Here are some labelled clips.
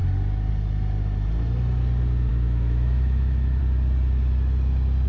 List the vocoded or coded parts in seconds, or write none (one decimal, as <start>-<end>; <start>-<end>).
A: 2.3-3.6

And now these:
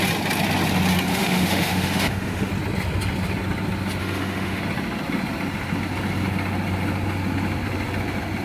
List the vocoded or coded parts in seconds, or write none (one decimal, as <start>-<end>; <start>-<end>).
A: 1.1-2.5; 4.0-4.6

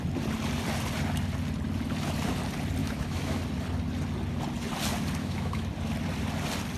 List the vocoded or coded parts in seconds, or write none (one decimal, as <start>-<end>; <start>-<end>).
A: 2.8-3.4; 5.2-5.7

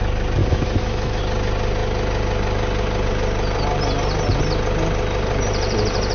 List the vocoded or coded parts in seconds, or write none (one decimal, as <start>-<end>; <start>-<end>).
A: 0.4-1.2